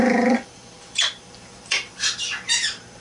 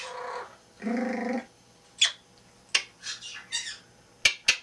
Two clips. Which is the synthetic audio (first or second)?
first